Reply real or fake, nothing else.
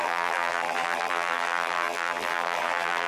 fake